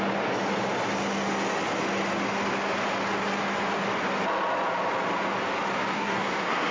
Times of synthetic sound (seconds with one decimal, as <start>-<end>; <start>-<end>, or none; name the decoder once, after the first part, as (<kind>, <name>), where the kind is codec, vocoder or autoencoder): 5.9-6.7 (codec, SNAC)